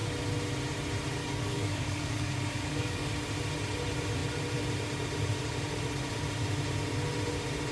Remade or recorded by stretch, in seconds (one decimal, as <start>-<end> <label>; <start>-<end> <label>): 0.0-1.2 recorded; 1.2-3.1 remade; 3.1-7.7 recorded